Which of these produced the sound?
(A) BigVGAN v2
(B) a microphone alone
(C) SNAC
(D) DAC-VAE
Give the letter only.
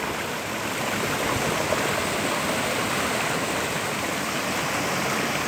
B